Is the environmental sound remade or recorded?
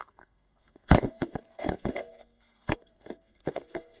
remade